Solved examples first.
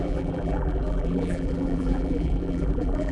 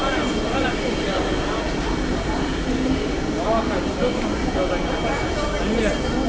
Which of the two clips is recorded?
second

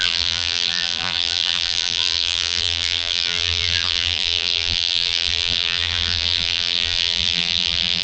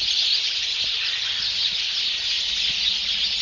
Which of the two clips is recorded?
second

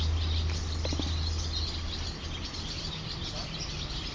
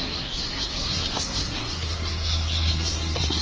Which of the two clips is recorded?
first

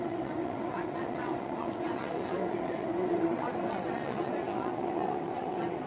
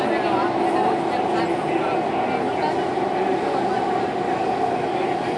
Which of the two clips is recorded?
second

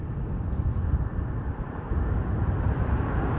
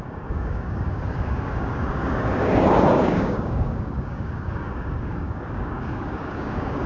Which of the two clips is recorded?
first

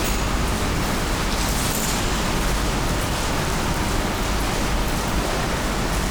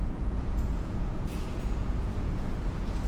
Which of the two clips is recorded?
first